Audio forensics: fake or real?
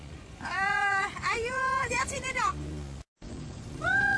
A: fake